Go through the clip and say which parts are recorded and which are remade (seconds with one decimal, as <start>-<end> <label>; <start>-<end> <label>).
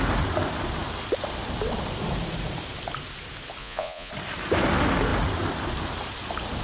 0.0-3.6 recorded; 3.6-4.1 remade; 4.1-6.6 recorded